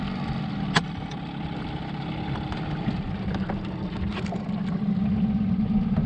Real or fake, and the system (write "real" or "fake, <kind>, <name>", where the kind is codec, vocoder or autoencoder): real